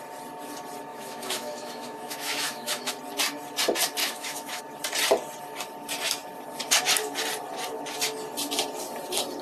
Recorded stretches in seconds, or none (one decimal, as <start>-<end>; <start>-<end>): 0.0-0.9; 2.9-4.0; 4.6-9.4